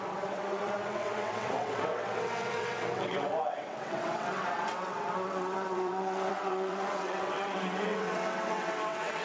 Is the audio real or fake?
fake